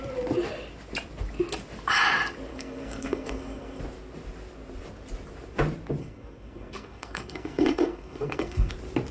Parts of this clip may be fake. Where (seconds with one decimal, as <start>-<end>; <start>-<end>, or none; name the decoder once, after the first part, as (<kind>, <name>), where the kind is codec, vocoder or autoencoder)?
2.5-3.8 (codec, SNAC); 6.0-8.7